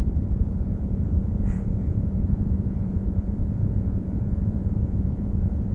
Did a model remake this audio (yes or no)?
yes